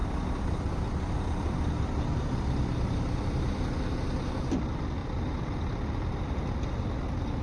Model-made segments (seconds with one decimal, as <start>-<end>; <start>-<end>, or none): 5.0-5.6